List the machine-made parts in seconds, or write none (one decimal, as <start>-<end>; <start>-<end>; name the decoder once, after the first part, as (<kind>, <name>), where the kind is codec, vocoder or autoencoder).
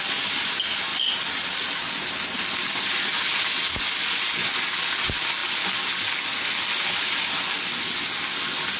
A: none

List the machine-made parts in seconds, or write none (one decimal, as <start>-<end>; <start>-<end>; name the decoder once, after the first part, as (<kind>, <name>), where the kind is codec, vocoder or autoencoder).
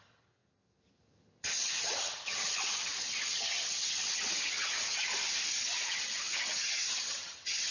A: 0.0-4.7 (vocoder, HiFi-GAN); 5.5-7.7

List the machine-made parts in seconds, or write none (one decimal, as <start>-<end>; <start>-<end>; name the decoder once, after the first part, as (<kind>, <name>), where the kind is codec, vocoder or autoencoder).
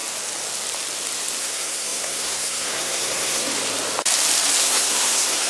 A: 1.4-3.5 (codec, SNAC); 4.6-5.5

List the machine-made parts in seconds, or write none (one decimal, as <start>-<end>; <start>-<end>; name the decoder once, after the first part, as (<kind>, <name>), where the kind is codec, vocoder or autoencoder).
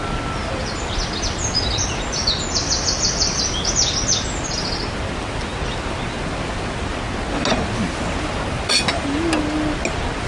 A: none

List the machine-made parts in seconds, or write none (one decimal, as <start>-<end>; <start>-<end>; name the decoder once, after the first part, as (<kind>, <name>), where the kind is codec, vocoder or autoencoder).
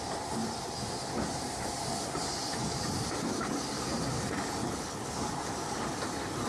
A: 4.6-5.1 (codec, HILCodec)